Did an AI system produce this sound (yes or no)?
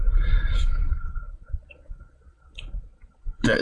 yes